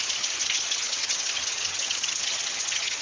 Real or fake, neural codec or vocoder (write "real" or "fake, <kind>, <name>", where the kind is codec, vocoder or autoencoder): fake, vocoder, HiFi-GAN